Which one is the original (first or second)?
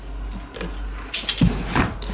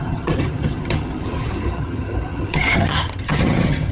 first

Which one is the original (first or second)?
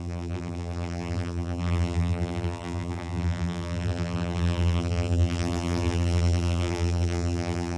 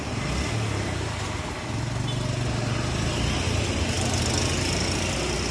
second